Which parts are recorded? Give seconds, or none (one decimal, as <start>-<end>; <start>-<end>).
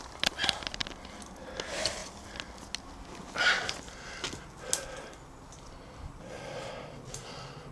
0.0-7.7